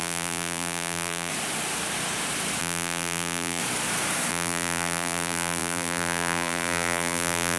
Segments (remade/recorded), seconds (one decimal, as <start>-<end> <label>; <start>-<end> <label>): 0.0-1.3 remade; 1.3-2.6 recorded; 2.6-3.6 remade; 3.6-4.3 recorded; 4.3-7.6 remade

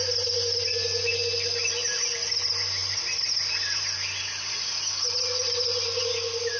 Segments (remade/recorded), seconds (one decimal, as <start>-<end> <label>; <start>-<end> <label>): 0.0-6.6 recorded